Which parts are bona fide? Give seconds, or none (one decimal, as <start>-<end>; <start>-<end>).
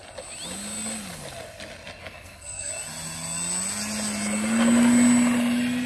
0.0-2.0; 2.7-5.9